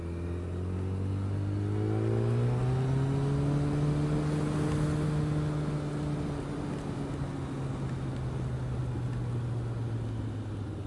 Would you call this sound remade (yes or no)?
no